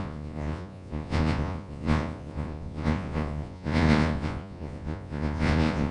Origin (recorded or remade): remade